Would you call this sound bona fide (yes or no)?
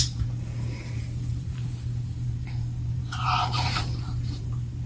no